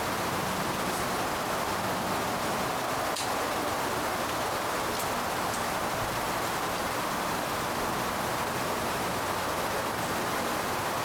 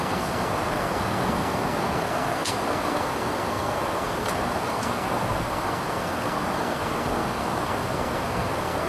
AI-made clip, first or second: second